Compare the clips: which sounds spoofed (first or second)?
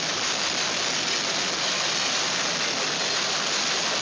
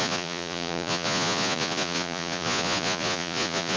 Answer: second